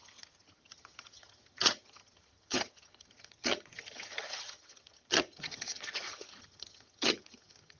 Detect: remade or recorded remade